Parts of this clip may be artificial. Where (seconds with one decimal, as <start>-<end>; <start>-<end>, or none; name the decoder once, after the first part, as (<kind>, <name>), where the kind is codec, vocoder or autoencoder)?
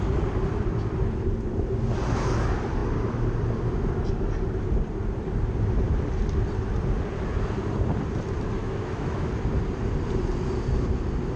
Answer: 8.6-9.3 (autoencoder, DAC-VAE)